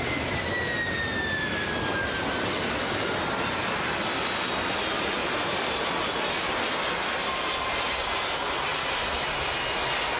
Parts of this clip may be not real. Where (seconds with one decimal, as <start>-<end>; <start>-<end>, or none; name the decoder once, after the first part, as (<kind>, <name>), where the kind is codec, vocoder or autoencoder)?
5.2-5.8 (vocoder, BigVGAN v2)